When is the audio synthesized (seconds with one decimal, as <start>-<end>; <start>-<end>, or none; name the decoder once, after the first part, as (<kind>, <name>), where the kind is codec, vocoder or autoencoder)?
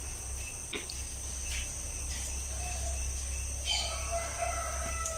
none